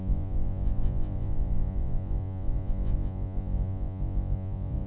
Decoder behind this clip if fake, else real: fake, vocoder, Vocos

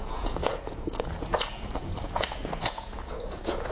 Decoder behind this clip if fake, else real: fake, vocoder, Vocos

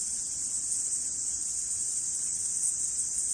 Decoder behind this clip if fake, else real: fake, vocoder, Vocos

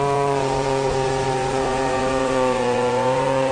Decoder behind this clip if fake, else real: fake, vocoder, Vocos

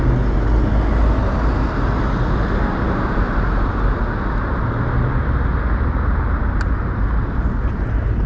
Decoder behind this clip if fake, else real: real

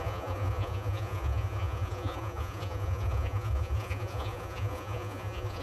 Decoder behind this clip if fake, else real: fake, vocoder, Vocos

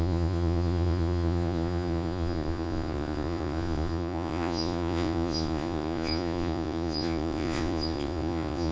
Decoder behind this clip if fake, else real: fake, vocoder, Vocos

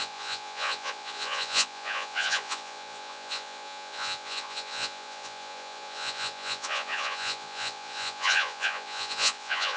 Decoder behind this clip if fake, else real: fake, vocoder, Vocos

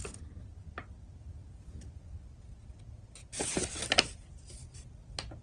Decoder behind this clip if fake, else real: real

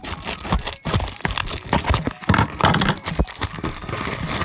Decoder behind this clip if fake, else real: real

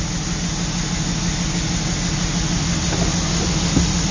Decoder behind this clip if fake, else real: real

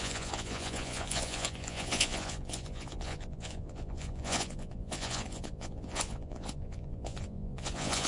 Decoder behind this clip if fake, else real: fake, vocoder, Vocos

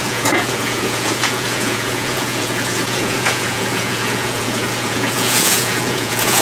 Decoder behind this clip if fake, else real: fake, vocoder, Vocos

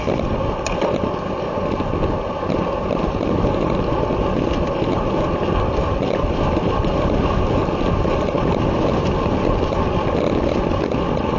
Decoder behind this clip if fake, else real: real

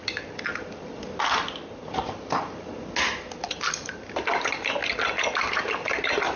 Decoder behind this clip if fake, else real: real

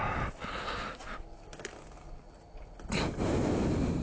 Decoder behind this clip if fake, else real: real